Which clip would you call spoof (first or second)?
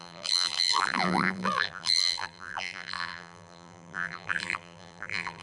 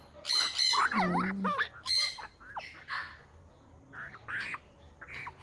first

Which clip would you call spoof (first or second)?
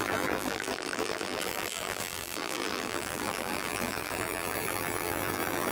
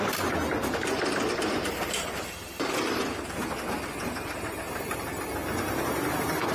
first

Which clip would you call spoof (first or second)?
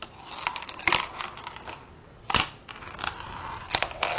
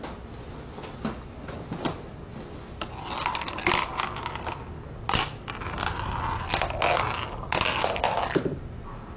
first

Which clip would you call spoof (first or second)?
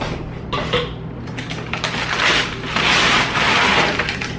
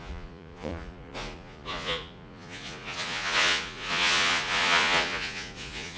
second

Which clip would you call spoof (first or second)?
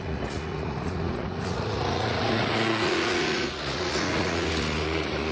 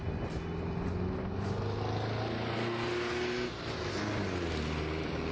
first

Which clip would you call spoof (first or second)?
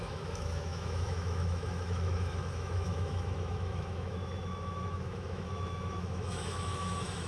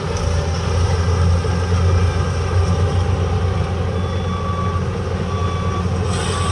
first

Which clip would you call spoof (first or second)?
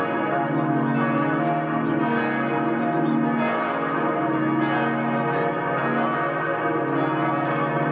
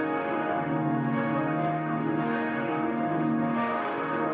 second